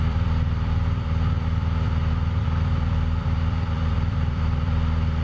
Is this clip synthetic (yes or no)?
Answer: yes